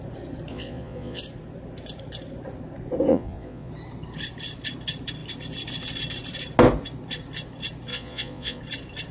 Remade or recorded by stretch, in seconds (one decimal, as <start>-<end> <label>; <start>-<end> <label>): 0.0-0.5 recorded; 0.5-1.2 remade; 1.2-3.1 recorded; 3.1-3.7 remade; 3.7-7.9 recorded; 7.9-8.6 remade; 8.6-9.1 recorded